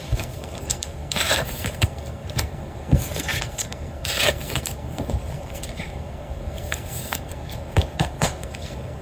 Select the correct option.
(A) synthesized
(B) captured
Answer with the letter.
A